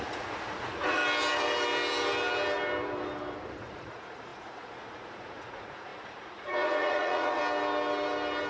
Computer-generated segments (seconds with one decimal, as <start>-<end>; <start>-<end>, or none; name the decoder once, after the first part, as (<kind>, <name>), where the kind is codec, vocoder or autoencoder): 0.0-1.0 (vocoder, Vocos); 3.6-7.4